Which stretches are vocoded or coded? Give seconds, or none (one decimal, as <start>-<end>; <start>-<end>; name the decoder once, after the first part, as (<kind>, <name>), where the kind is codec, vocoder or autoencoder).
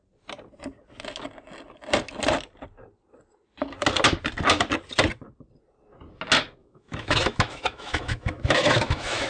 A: 6.6-9.3 (autoencoder, DAC-VAE)